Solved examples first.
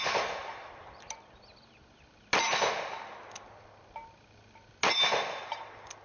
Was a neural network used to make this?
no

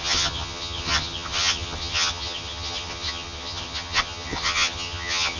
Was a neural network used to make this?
yes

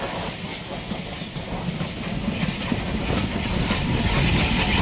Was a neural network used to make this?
no